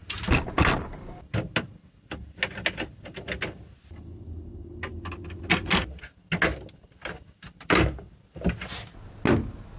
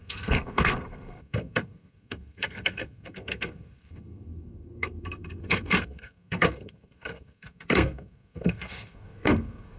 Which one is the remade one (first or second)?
second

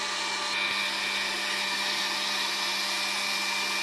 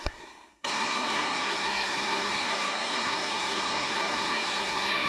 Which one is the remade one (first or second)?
second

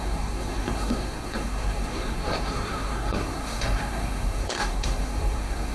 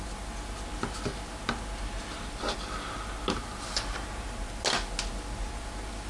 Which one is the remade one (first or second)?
first